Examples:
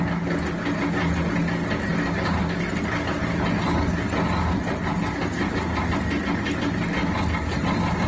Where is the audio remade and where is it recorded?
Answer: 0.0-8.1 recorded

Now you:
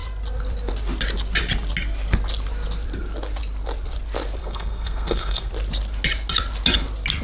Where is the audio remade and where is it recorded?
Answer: 0.0-4.4 recorded; 4.4-5.5 remade; 5.5-7.2 recorded